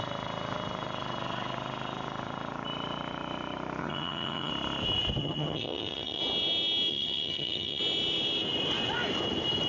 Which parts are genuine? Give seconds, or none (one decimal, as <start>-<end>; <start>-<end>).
0.0-3.8; 4.5-5.2; 6.2-6.9; 7.8-9.7